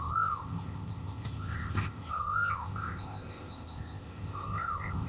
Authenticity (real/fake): fake